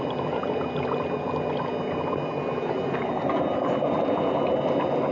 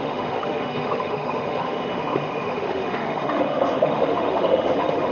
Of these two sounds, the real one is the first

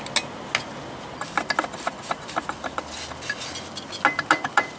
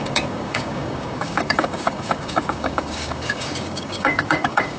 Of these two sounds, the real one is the first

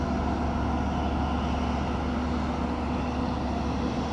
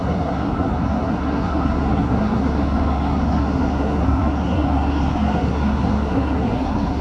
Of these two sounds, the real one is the first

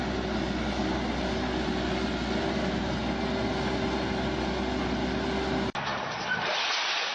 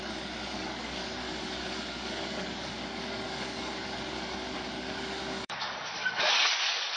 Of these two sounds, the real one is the first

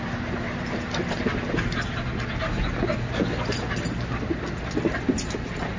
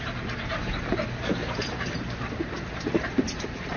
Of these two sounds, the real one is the first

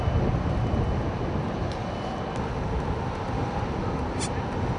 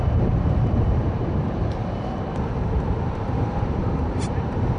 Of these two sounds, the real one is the first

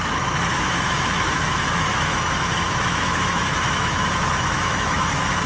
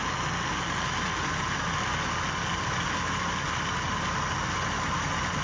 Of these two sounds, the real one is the second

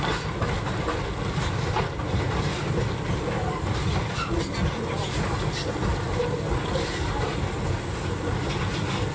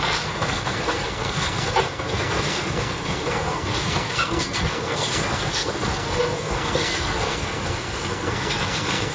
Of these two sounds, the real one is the first